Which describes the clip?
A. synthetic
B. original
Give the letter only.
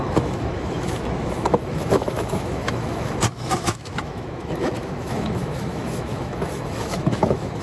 A